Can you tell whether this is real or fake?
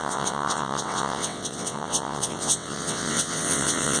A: fake